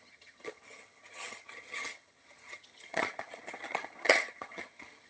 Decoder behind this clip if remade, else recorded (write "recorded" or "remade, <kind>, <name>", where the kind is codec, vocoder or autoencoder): remade, vocoder, HiFi-GAN